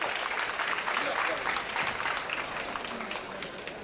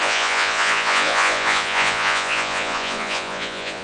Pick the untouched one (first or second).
first